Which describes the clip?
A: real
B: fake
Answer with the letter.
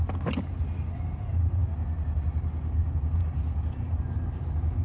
A